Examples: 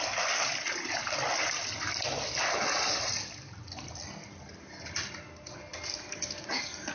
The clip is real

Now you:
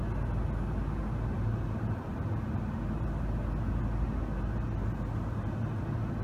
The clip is real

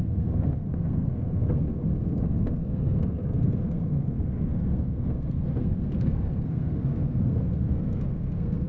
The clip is fake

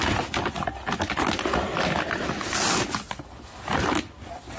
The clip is real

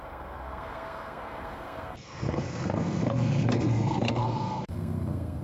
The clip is fake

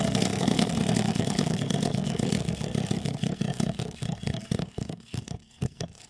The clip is fake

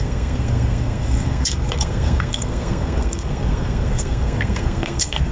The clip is fake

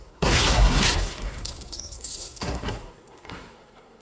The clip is fake